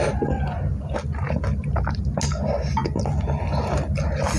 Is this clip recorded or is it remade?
recorded